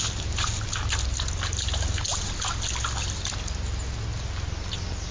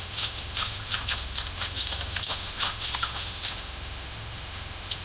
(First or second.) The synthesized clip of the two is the second